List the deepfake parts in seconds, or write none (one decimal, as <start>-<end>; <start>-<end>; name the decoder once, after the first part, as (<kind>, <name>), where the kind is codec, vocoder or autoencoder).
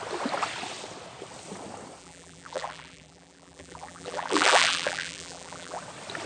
2.0-5.8 (vocoder, BigVGAN v2)